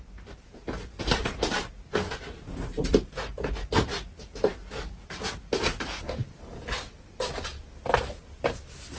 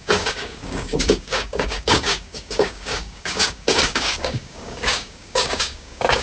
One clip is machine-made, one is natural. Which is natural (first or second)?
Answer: first